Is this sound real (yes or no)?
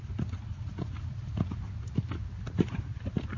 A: yes